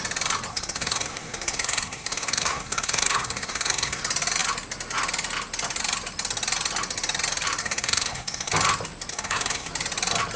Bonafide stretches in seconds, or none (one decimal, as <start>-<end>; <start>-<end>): 0.0-0.5; 4.0-7.6; 8.5-9.1; 9.7-10.4